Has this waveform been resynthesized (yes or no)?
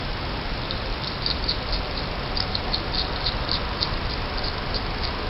no